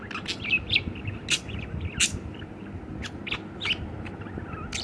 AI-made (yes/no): no